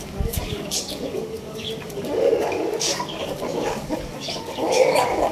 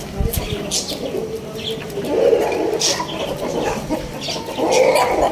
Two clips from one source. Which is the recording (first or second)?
second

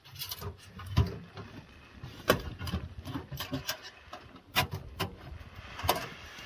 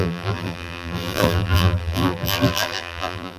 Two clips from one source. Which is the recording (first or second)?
first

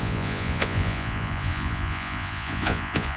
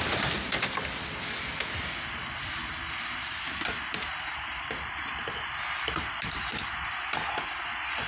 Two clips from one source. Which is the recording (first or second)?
second